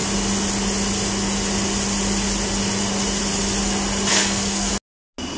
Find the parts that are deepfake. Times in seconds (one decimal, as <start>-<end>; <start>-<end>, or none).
4.1-4.7